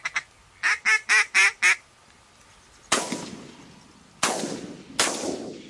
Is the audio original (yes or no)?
yes